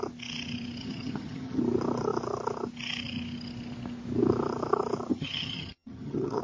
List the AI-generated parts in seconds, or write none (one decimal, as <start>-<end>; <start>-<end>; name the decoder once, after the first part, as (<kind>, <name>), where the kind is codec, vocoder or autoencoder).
0.8-1.6 (vocoder, HiFi-GAN); 5.1-6.4